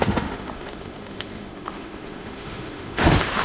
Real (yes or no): no